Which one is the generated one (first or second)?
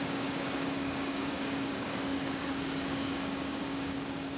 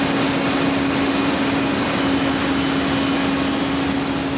first